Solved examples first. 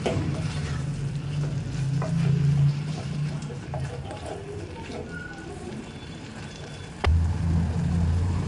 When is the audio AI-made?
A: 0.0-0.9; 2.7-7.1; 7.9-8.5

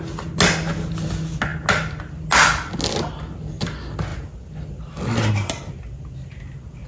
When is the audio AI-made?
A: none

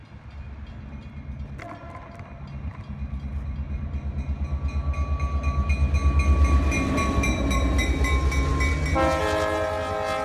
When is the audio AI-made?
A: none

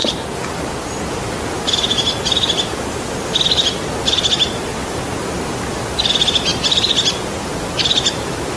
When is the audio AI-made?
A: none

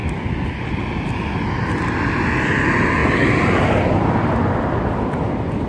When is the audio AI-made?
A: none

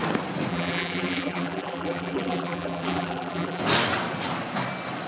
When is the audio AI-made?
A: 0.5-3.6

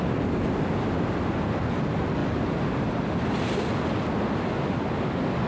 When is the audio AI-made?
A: none

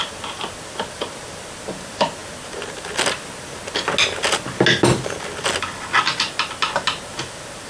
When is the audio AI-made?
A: none